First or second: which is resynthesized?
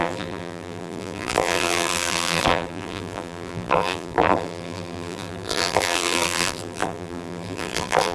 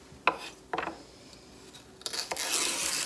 first